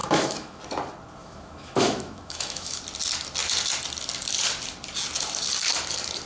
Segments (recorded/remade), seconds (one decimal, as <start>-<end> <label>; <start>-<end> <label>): 0.0-0.6 remade; 0.6-1.2 recorded; 1.2-2.8 remade; 2.8-6.3 recorded